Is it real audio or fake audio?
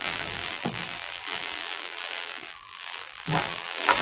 fake